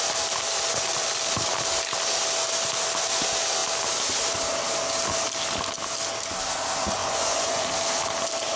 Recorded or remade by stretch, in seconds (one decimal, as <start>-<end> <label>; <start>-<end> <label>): 0.0-7.0 recorded; 7.0-7.7 remade; 7.7-8.6 recorded